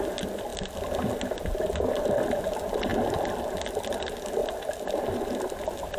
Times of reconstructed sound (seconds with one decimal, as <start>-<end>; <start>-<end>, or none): none